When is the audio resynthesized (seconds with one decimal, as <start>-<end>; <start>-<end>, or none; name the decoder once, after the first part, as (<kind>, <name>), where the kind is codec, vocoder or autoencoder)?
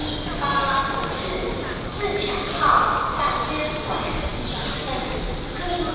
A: none